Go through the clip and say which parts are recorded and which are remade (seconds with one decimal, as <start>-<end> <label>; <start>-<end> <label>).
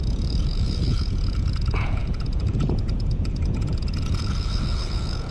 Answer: 0.0-5.3 remade